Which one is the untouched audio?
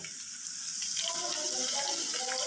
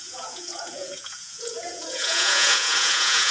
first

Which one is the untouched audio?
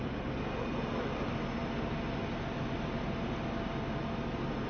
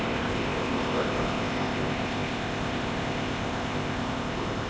first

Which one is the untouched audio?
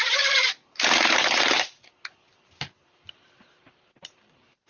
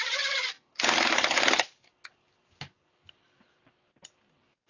second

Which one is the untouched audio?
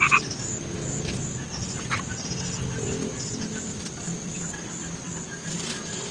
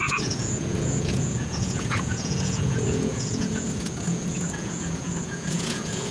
first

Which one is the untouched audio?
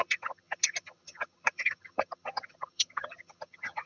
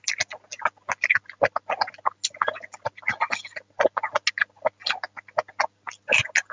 second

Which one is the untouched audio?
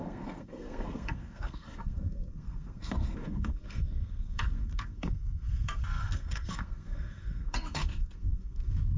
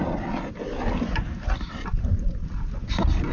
second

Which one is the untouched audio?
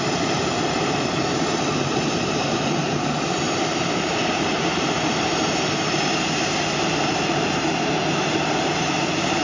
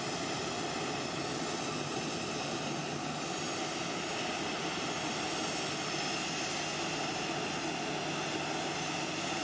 second